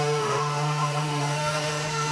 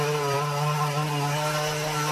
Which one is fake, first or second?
first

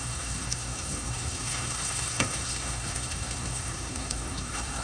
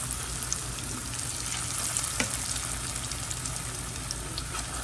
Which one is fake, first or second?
first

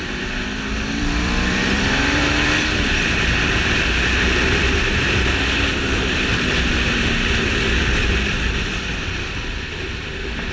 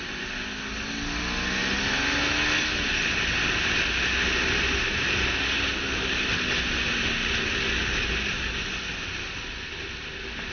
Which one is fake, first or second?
first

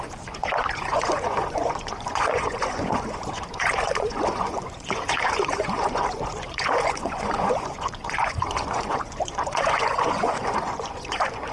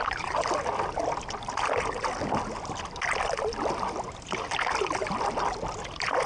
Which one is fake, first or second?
first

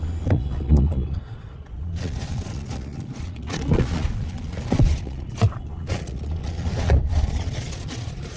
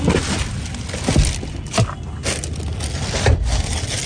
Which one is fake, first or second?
first